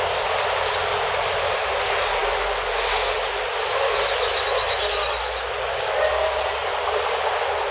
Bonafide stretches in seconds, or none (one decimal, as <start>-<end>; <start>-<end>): 0.0-7.7